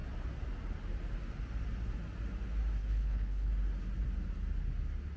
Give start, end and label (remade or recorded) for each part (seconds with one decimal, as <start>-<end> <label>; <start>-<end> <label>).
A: 0.0-2.8 recorded; 2.8-3.5 remade; 3.5-5.2 recorded